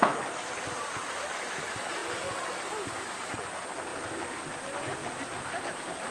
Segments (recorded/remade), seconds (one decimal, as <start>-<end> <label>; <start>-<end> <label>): 0.0-6.1 recorded